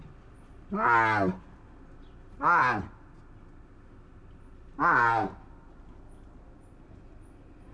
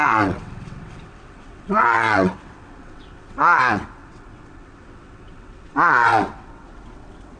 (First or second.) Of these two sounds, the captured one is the first